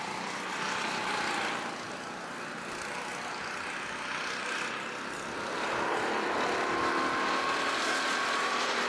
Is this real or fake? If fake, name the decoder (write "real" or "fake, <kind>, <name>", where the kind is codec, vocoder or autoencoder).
real